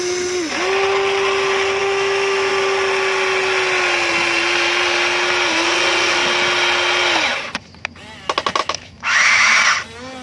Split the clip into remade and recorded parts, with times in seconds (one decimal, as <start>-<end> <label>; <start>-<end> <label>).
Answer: 0.0-1.8 recorded; 1.8-2.5 remade; 2.5-8.6 recorded; 8.6-9.6 remade; 9.6-10.2 recorded